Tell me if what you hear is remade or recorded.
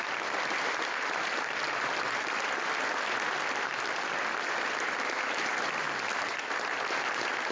remade